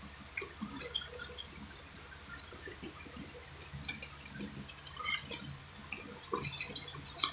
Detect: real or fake fake